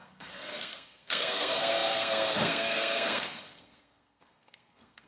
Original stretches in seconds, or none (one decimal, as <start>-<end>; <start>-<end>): none